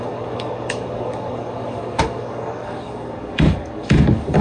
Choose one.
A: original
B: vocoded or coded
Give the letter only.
B